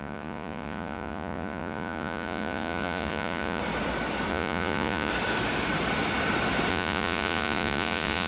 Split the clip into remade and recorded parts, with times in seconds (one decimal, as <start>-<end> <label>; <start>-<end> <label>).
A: 0.0-3.6 remade; 3.6-4.3 recorded; 4.3-5.1 remade; 5.1-6.7 recorded; 6.7-8.3 remade

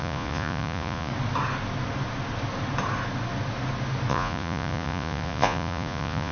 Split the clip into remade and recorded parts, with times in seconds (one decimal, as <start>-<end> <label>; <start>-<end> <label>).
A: 0.0-1.1 remade; 1.1-4.1 recorded; 4.1-6.3 remade

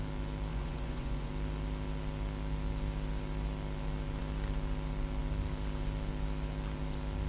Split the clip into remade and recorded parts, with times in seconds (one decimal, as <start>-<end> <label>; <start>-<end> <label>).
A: 0.0-0.5 recorded; 0.5-1.3 remade; 1.3-7.3 recorded

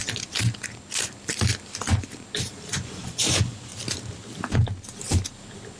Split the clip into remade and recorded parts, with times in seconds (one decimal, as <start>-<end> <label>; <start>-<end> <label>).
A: 0.0-2.7 recorded; 2.7-3.7 remade; 3.7-5.8 recorded

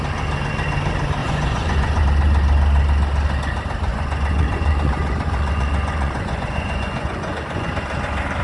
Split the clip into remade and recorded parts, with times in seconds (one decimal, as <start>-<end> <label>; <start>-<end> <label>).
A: 0.0-1.2 recorded; 1.2-2.0 remade; 2.0-3.9 recorded; 3.9-7.7 remade; 7.7-8.4 recorded

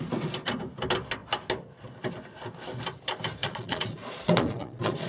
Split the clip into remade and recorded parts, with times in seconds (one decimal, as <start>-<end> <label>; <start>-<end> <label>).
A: 0.0-3.4 recorded; 3.4-5.1 remade

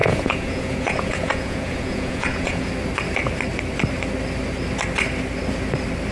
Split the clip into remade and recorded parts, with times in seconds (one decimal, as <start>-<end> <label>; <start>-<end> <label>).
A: 0.0-2.7 remade; 2.7-6.1 recorded

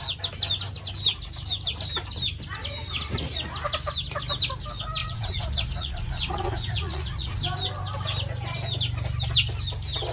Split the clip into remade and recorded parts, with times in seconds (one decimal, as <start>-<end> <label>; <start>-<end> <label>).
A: 0.0-5.0 recorded; 5.0-7.4 remade; 7.4-10.1 recorded